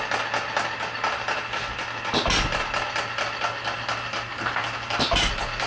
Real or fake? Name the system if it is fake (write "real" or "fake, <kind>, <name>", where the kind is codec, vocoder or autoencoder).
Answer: real